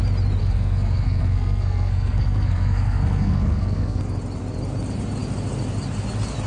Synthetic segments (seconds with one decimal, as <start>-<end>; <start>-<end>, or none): 0.4-4.0